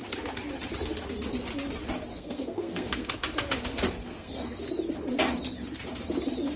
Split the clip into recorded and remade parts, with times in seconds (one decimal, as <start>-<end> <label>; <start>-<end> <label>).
0.0-2.1 recorded; 2.1-3.1 remade; 3.1-4.0 recorded; 4.0-4.6 remade; 4.6-6.6 recorded